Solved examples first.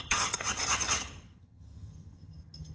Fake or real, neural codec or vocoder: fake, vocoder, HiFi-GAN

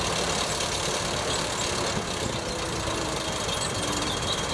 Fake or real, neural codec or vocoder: fake, vocoder, BigVGAN v2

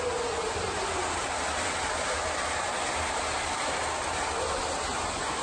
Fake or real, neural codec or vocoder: real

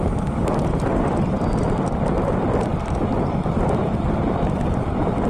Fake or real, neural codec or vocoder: real